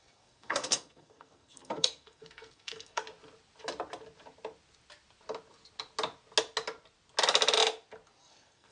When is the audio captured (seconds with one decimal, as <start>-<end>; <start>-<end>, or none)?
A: 3.0-8.2